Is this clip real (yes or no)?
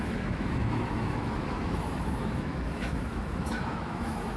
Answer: no